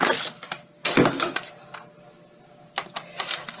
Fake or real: real